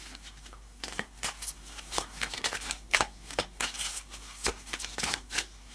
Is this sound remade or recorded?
remade